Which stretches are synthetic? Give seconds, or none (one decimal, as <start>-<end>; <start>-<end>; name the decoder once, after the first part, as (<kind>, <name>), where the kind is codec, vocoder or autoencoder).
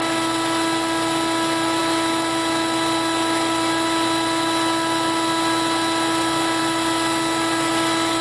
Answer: none